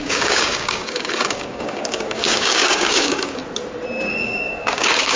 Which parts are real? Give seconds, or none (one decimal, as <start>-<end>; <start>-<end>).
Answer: 3.4-4.1